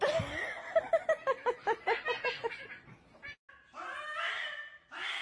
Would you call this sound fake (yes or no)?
no